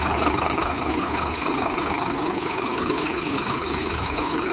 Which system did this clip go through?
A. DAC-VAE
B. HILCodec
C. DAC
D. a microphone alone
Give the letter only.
B